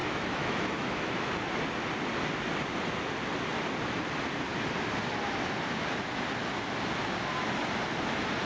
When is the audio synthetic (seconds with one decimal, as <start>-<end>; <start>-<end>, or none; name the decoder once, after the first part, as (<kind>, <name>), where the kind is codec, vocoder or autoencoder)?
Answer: 0.0-1.3 (autoencoder, DAC-VAE)